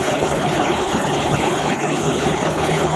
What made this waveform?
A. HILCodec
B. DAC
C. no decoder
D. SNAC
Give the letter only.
A